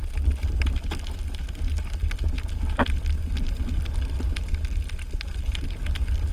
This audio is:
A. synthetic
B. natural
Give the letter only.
B